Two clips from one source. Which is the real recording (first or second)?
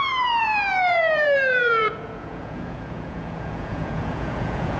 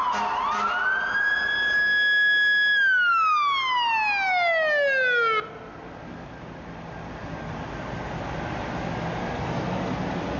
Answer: second